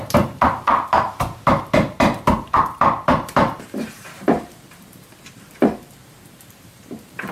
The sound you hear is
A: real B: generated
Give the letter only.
B